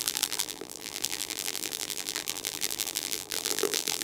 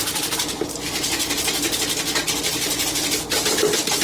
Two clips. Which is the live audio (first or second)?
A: second